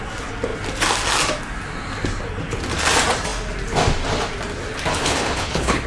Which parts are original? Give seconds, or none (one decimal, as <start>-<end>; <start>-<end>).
0.0-5.0